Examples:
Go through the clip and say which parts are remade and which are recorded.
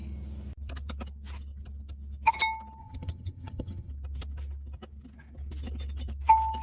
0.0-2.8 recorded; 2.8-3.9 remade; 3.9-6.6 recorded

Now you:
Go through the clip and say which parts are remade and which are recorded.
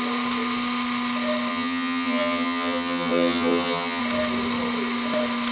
0.0-1.5 recorded; 1.5-4.0 remade; 4.0-5.5 recorded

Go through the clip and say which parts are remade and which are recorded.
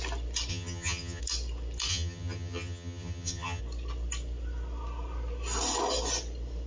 0.0-0.5 recorded; 0.5-1.2 remade; 1.2-1.9 recorded; 1.9-3.6 remade; 3.6-6.7 recorded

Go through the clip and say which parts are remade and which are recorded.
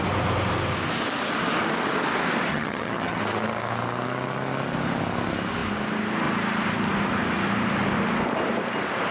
0.0-2.5 recorded; 2.5-3.2 remade; 3.2-9.1 recorded